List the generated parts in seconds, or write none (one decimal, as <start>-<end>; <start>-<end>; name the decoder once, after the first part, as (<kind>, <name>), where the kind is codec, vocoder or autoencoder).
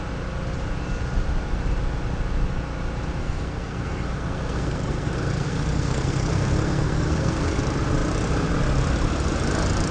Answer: 3.2-7.6 (codec, SNAC)